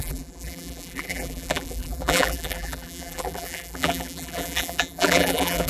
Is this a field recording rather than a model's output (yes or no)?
no